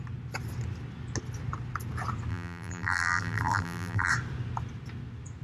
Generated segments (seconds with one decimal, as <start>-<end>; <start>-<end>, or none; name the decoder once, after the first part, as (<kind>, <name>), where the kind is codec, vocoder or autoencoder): 2.3-4.1 (vocoder, BigVGAN v2)